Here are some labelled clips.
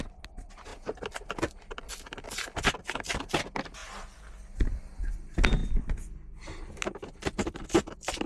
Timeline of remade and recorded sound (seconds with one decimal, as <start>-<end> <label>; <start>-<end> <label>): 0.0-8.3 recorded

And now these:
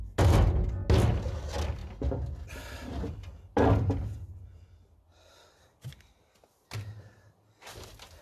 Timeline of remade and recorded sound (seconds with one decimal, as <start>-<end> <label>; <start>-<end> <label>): 0.0-8.2 recorded

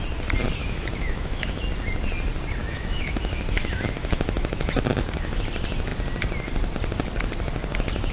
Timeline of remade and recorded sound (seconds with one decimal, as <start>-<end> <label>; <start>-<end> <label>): 0.0-0.6 recorded; 0.6-1.6 remade; 1.6-2.6 recorded; 2.6-5.4 remade; 5.4-8.1 recorded

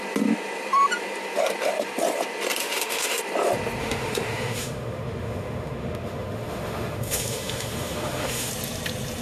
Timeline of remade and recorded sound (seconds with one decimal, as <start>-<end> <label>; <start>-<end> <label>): 0.0-2.6 recorded; 2.6-3.2 remade; 3.2-3.8 recorded; 3.8-8.5 remade; 8.5-9.2 recorded

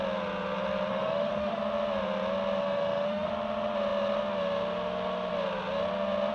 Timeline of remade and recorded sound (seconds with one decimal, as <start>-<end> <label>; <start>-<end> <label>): 0.0-0.9 recorded; 0.9-1.6 remade; 1.6-2.6 recorded; 2.6-3.3 remade; 3.3-6.3 recorded